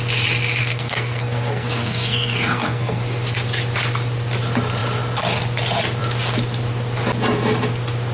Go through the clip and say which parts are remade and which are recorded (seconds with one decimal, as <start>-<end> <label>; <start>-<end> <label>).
0.0-0.6 recorded; 0.6-3.0 remade; 3.0-8.1 recorded